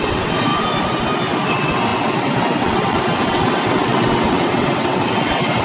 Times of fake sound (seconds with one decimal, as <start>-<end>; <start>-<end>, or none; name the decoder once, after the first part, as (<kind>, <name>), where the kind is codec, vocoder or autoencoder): 0.0-0.5 (vocoder, WaveNeXt); 1.5-5.6